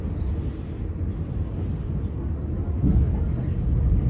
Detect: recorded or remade recorded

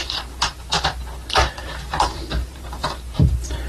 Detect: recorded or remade remade